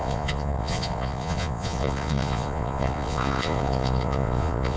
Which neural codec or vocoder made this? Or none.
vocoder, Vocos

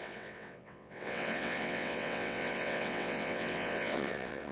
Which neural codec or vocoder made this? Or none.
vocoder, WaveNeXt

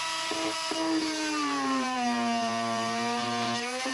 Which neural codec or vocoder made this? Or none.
vocoder, BigVGAN v2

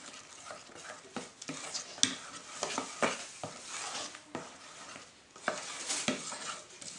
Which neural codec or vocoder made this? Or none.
none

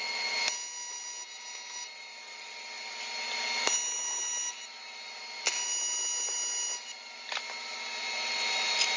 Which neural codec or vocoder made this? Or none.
none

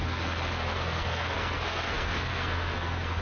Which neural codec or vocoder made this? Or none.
codec, SNAC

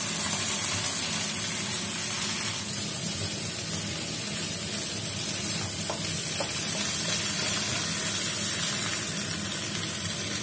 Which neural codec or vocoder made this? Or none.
none